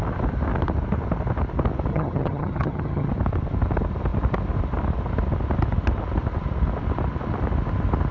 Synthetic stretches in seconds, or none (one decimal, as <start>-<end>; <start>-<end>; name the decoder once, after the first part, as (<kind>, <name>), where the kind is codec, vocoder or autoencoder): 1.9-3.1 (vocoder, HiFi-GAN)